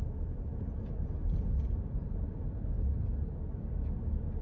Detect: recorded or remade recorded